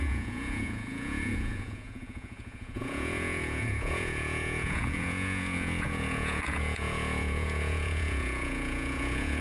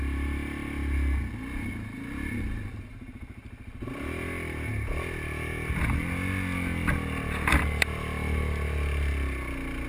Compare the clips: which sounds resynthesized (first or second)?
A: first